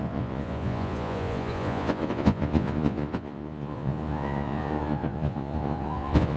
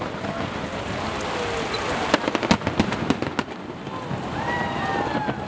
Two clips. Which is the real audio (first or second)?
second